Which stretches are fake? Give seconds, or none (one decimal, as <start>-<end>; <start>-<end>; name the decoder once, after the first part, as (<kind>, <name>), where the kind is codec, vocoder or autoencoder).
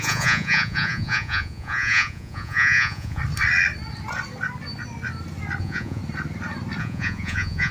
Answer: 0.0-3.2 (vocoder, Vocos); 5.6-6.0; 6.8-7.7